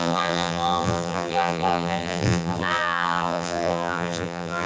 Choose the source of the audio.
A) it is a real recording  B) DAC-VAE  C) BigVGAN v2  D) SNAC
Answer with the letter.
C